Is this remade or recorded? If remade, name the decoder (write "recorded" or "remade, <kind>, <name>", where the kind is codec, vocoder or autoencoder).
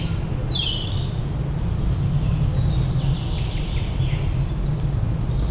recorded